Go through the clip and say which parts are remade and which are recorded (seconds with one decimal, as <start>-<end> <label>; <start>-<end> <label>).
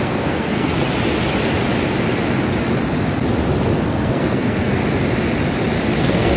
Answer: 0.0-0.7 remade; 0.7-3.9 recorded; 3.9-4.8 remade; 4.8-6.0 recorded; 6.0-6.4 remade